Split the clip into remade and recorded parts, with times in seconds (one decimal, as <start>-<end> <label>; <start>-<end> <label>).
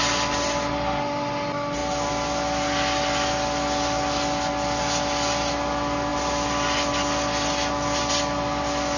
0.0-9.0 recorded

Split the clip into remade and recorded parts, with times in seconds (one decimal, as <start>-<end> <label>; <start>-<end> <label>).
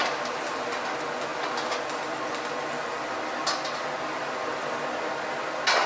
0.0-5.9 recorded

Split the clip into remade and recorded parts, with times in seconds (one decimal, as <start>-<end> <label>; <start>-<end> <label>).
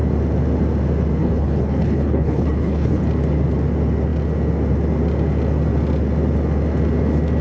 0.0-1.2 recorded; 1.2-3.0 remade; 3.0-7.4 recorded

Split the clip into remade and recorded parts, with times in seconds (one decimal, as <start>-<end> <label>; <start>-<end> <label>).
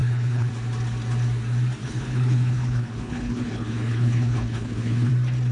0.0-0.5 remade; 0.5-1.8 recorded; 1.8-5.1 remade; 5.1-5.5 recorded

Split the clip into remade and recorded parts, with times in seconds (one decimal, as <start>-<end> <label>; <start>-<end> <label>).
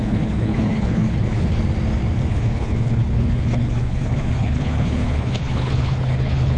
0.0-1.6 remade; 1.6-2.3 recorded; 2.3-6.6 remade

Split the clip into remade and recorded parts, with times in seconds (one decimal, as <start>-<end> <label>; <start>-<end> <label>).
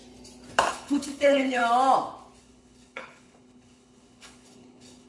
0.0-0.7 recorded; 0.7-1.6 remade; 1.6-2.4 recorded; 2.4-5.1 remade